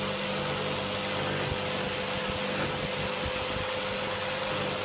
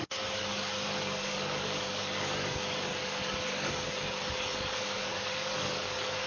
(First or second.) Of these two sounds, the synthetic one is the second